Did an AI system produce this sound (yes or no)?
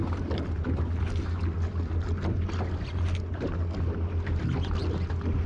no